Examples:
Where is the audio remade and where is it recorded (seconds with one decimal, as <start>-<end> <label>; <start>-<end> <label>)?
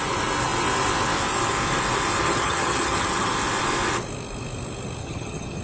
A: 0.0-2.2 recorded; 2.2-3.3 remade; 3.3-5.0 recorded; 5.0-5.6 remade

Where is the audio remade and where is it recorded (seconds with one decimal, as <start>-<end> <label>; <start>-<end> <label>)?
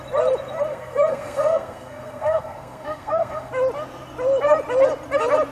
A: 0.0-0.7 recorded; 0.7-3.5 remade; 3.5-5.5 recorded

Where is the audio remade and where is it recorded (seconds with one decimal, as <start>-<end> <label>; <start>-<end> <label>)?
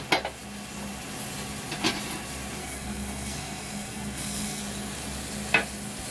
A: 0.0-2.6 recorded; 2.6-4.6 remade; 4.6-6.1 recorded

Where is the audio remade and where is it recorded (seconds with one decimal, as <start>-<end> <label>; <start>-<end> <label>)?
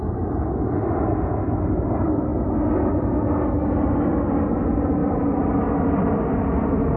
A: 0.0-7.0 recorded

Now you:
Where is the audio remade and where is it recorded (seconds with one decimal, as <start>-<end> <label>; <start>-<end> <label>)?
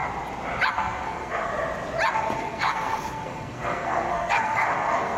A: 0.0-0.7 recorded; 0.7-1.5 remade; 1.5-2.1 recorded; 2.1-5.2 remade